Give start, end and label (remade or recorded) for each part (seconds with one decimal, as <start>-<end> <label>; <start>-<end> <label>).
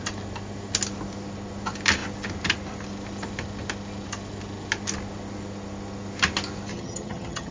0.0-6.7 recorded; 6.7-7.5 remade